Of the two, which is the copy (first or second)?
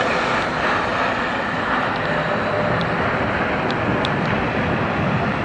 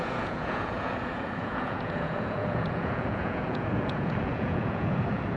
second